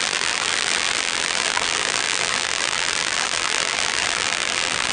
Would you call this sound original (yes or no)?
no